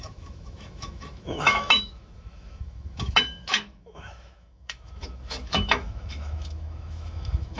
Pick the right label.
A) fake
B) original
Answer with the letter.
A